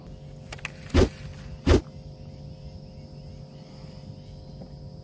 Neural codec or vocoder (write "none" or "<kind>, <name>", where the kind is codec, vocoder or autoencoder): none